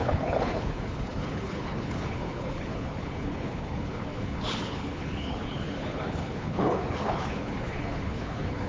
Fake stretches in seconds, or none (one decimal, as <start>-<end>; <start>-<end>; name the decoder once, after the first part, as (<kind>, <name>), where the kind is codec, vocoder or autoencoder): 0.0-8.7 (codec, HILCodec)